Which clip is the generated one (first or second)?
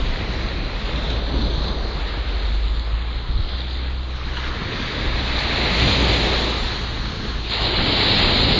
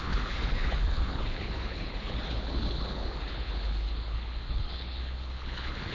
second